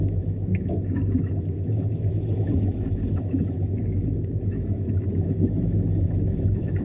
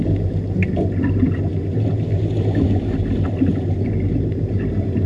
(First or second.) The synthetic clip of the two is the first